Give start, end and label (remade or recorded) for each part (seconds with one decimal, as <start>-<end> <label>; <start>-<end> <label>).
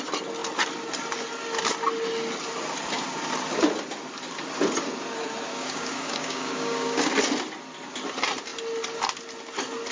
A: 0.0-5.5 recorded; 5.5-7.1 remade; 7.1-9.9 recorded